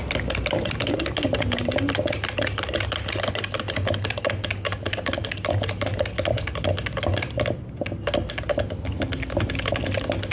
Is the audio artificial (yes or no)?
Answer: no